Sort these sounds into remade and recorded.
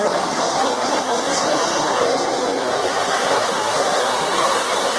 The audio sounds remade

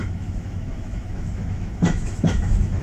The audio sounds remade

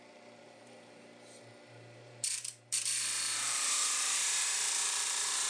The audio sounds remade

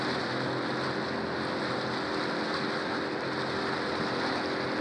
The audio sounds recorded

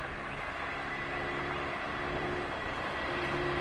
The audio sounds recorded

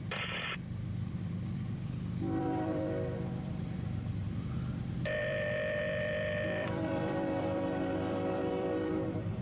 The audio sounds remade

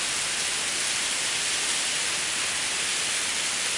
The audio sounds recorded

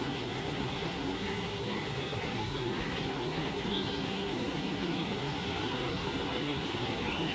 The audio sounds remade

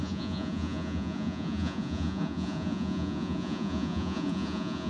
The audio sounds remade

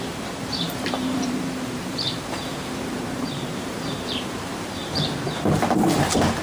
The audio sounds remade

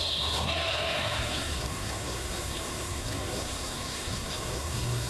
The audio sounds remade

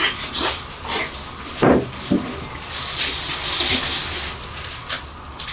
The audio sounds recorded